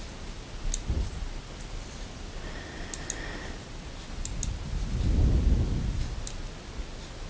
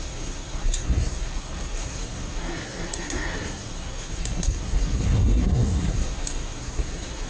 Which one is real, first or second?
first